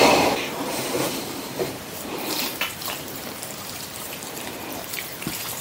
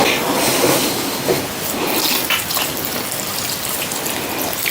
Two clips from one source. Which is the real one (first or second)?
second